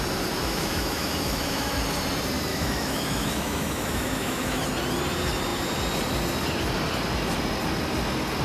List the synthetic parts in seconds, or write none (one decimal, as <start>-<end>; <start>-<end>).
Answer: 0.4-1.7; 2.5-4.7